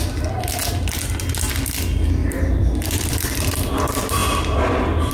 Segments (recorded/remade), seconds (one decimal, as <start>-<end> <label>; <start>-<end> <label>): 0.0-0.6 remade; 0.6-1.5 recorded; 1.5-5.1 remade